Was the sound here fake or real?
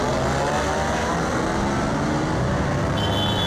real